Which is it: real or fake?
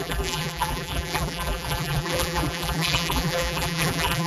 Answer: fake